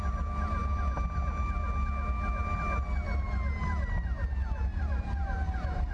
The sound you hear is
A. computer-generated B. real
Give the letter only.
B